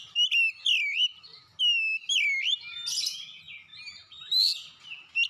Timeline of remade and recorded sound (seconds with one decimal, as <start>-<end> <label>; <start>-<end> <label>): 0.0-3.7 recorded; 3.7-4.3 remade; 4.3-5.3 recorded